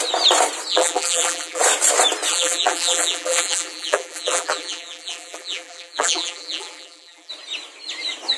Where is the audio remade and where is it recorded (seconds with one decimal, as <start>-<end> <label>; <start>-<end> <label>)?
0.0-0.7 recorded; 0.7-1.6 remade; 1.6-2.3 recorded; 2.3-7.3 remade; 7.3-8.4 recorded